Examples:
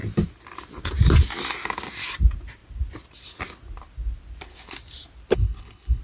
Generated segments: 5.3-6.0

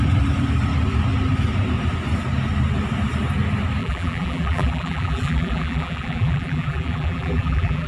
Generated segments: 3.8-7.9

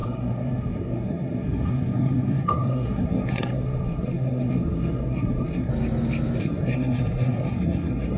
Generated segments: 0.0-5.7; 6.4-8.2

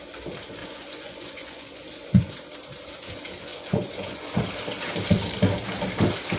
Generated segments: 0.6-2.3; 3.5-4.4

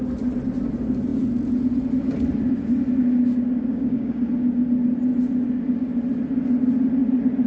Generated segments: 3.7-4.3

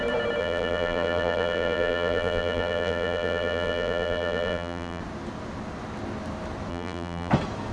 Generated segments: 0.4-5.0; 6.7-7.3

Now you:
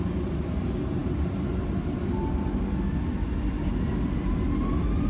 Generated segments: none

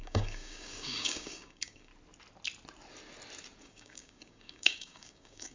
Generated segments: 0.0-1.9; 3.6-5.5